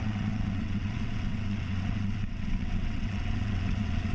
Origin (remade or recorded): remade